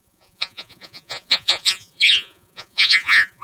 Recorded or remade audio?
remade